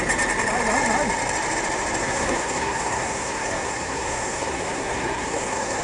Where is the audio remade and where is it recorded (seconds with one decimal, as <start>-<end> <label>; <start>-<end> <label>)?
0.0-2.0 recorded; 2.0-5.8 remade